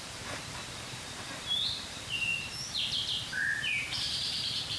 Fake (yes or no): yes